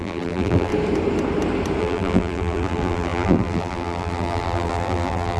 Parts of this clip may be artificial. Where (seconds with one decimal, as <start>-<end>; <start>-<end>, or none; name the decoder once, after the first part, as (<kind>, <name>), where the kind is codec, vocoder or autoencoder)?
0.0-0.7 (vocoder, BigVGAN v2); 1.8-5.4